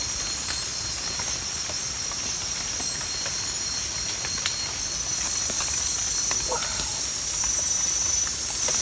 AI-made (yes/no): no